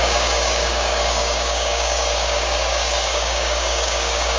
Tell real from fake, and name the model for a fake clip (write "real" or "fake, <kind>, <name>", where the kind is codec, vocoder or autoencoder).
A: fake, codec, DAC